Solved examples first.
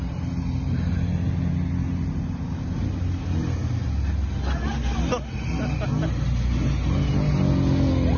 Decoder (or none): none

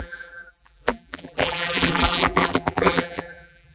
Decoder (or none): vocoder, BigVGAN v2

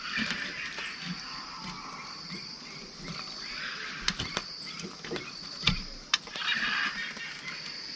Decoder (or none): none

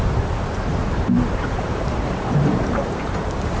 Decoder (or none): vocoder, BigVGAN v2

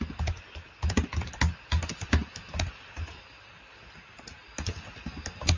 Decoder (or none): none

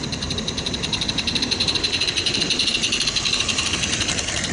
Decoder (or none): vocoder, BigVGAN v2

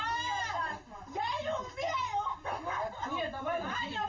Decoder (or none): none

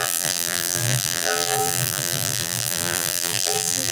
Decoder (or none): vocoder, BigVGAN v2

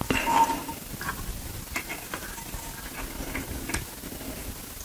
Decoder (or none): none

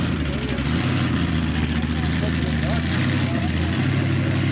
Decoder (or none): none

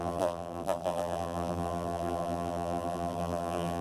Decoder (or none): vocoder, BigVGAN v2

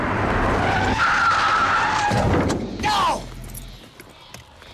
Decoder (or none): none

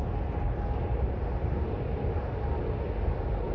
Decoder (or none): none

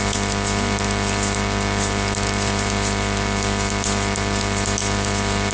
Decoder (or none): none